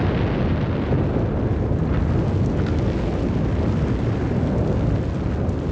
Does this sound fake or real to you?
real